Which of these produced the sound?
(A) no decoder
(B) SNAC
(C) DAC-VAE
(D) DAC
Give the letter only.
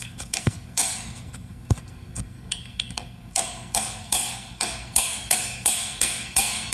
B